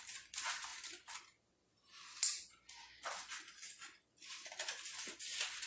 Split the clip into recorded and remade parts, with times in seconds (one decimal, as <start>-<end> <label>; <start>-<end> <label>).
0.0-5.7 recorded